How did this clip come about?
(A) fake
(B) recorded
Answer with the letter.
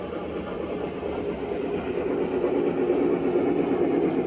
B